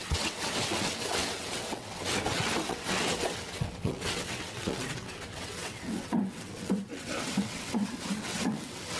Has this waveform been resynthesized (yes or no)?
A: yes